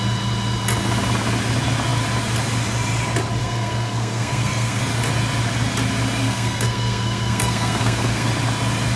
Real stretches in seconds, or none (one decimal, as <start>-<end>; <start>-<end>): 0.0-3.4; 4.8-6.2; 8.3-9.0